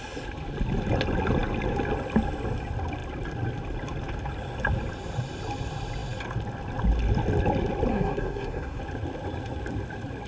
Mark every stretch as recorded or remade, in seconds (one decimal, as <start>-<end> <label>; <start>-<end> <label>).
0.0-7.9 recorded; 7.9-8.8 remade; 8.8-10.3 recorded